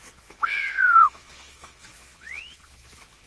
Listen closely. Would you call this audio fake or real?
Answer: fake